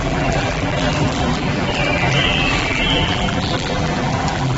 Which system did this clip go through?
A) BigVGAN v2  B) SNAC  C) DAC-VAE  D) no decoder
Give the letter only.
A